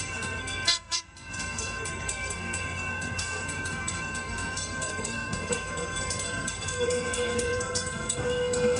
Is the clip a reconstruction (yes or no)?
yes